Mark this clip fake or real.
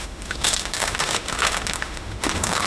fake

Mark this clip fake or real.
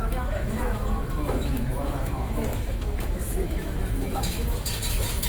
fake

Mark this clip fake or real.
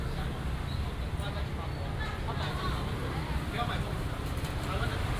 real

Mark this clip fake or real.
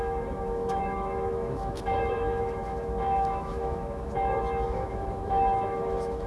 fake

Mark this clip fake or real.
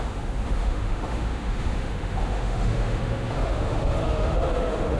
fake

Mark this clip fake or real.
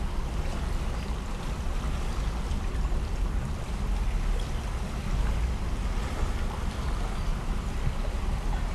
real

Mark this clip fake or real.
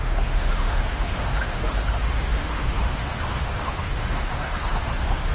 fake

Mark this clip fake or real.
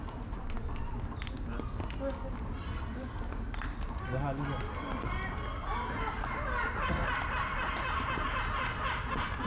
real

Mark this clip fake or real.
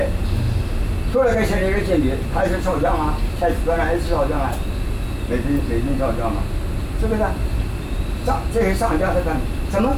real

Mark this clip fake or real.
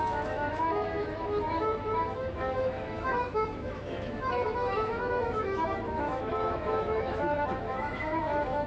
fake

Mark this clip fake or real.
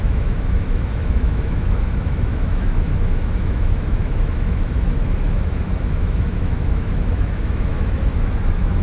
fake